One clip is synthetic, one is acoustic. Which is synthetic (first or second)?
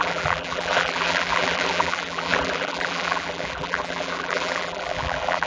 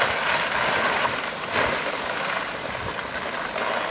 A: first